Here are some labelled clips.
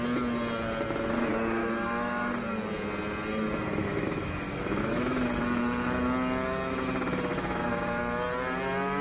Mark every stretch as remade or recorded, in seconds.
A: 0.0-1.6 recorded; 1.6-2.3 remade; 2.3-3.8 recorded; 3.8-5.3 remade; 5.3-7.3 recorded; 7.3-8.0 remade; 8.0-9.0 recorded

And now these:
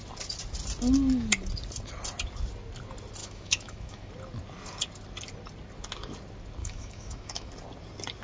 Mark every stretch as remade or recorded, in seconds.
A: 0.0-3.2 recorded; 3.2-4.1 remade; 4.1-6.6 recorded; 6.6-7.5 remade; 7.5-8.2 recorded

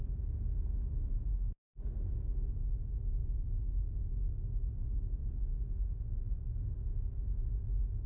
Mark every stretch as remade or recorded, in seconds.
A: 0.0-8.1 recorded

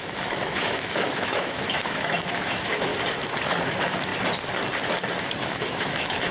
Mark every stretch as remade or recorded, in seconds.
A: 0.0-2.9 remade; 2.9-3.6 recorded; 3.6-4.1 remade; 4.1-5.4 recorded; 5.4-6.3 remade